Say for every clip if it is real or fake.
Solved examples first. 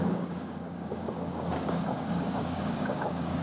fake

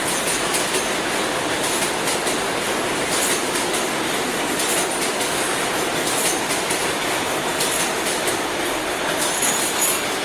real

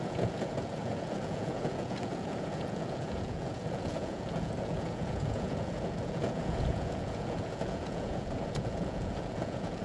fake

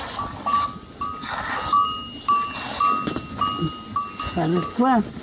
real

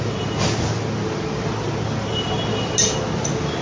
real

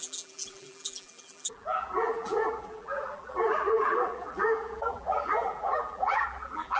fake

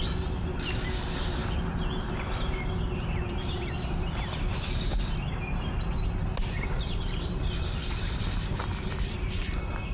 real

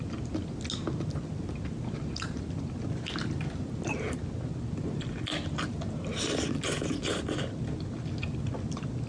real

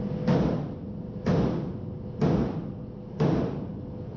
real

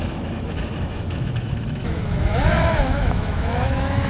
fake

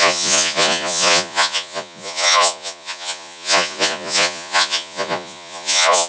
fake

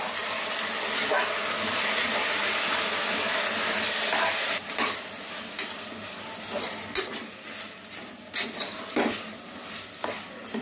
real